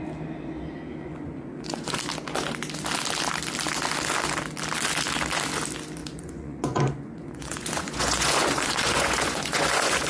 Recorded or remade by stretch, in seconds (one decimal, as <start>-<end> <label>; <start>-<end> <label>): 0.0-1.0 recorded; 1.0-2.0 remade; 2.0-6.0 recorded; 6.0-10.1 remade